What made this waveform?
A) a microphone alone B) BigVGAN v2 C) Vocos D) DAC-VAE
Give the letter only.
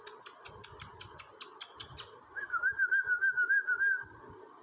A